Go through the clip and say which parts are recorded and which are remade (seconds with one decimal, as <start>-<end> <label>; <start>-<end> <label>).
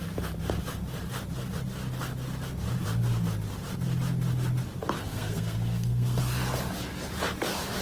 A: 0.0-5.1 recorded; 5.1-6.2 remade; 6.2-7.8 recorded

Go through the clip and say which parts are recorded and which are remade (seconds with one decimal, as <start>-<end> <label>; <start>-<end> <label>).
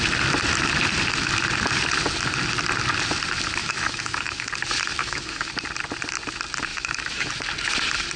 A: 0.0-3.6 recorded; 3.6-4.5 remade; 4.5-5.0 recorded; 5.0-5.5 remade; 5.5-6.7 recorded; 6.7-7.3 remade; 7.3-8.2 recorded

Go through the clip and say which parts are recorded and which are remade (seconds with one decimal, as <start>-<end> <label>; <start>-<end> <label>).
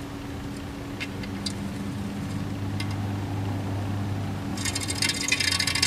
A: 0.0-5.9 recorded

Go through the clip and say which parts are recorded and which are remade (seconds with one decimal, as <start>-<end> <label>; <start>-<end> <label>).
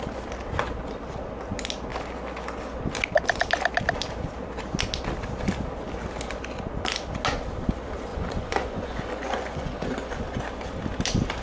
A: 0.0-8.1 recorded; 8.1-10.4 remade; 10.4-11.4 recorded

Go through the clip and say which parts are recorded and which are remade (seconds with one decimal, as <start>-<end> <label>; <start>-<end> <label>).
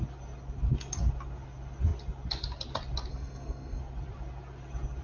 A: 0.0-3.1 recorded; 3.1-3.8 remade; 3.8-5.0 recorded